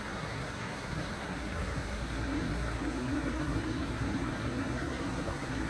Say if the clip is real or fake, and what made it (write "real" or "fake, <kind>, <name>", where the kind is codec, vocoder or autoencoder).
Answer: fake, codec, SNAC